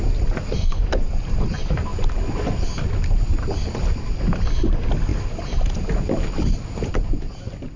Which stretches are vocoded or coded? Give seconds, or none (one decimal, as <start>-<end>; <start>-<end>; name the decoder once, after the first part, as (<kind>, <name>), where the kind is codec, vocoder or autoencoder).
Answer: none